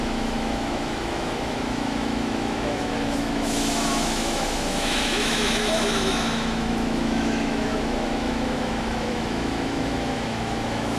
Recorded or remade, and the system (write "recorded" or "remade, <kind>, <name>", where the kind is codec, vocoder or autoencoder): remade, autoencoder, DAC-VAE